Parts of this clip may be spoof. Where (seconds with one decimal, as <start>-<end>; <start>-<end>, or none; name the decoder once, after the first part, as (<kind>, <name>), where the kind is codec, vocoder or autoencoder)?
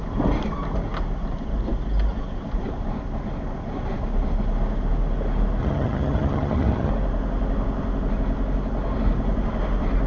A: 5.6-6.9 (vocoder, HiFi-GAN)